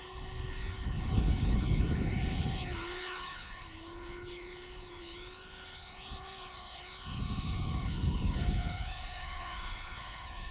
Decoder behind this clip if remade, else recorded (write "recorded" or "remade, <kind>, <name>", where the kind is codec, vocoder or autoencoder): remade, codec, HILCodec